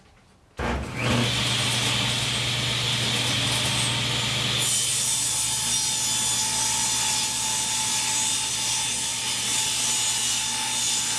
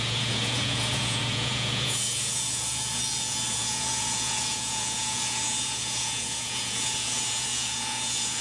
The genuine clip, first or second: first